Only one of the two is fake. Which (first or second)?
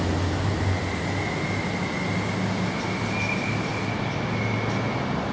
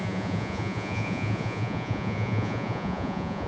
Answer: second